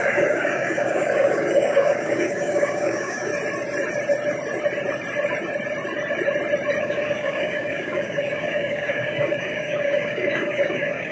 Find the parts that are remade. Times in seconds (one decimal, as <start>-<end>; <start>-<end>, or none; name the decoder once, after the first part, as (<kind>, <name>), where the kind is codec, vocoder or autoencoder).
0.0-3.3 (codec, DAC); 6.8-11.1